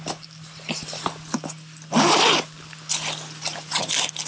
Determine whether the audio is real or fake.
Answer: real